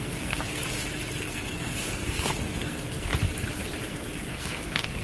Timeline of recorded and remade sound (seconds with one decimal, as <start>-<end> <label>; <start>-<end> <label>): 0.0-0.6 remade; 0.6-1.2 recorded; 1.2-3.1 remade; 3.1-3.8 recorded; 3.8-5.0 remade